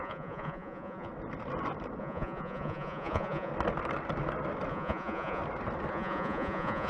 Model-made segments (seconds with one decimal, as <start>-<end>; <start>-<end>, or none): 0.0-1.1; 2.0-3.5; 4.7-5.4; 5.9-6.9